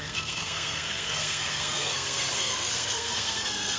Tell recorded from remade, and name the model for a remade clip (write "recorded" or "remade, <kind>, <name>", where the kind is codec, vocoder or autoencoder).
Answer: remade, codec, SNAC